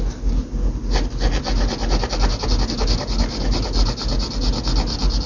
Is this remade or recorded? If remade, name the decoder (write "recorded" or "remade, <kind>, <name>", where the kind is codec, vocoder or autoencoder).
recorded